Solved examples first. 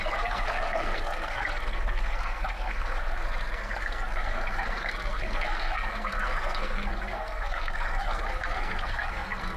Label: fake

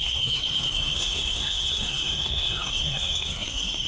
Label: fake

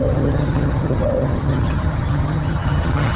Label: fake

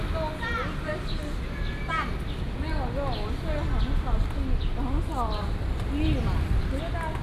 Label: real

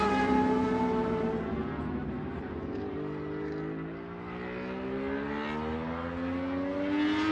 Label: real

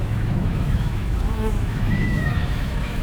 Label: fake